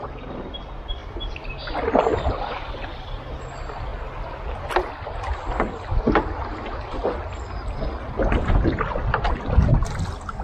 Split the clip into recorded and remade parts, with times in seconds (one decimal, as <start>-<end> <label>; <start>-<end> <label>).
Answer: 0.0-1.0 recorded; 1.0-1.5 remade; 1.5-2.1 recorded; 2.1-3.3 remade; 3.3-10.4 recorded